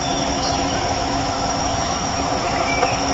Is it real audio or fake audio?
fake